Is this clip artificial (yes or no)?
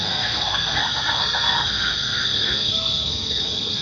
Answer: yes